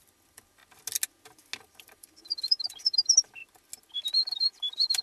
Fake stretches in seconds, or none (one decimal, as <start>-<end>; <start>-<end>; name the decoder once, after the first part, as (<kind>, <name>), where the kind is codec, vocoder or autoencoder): 0.0-0.6 (vocoder, BigVGAN v2); 1.6-3.4; 4.6-5.0